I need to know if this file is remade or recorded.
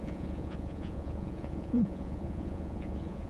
remade